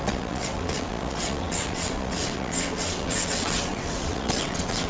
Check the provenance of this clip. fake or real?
fake